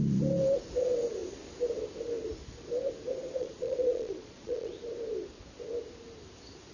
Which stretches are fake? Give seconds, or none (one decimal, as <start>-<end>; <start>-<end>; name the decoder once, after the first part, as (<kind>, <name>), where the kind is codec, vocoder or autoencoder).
3.4-4.7 (vocoder, Vocos)